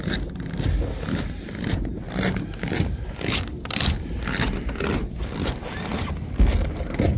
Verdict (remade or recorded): recorded